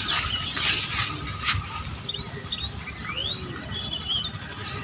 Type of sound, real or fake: real